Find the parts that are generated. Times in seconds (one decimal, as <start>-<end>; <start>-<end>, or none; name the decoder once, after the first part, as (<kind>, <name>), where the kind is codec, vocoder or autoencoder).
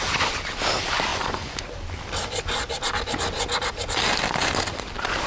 1.1-1.6 (vocoder, Vocos)